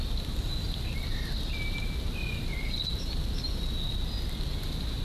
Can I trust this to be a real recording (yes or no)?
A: yes